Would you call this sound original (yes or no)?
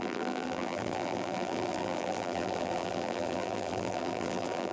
no